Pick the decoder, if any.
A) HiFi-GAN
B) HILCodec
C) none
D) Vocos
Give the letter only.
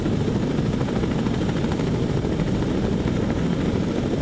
C